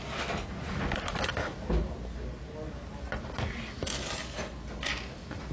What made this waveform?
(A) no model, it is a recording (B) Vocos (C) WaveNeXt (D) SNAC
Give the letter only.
A